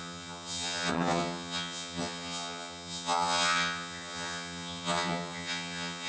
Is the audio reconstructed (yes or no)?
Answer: yes